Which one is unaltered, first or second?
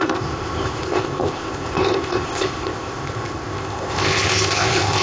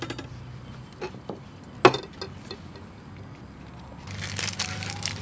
second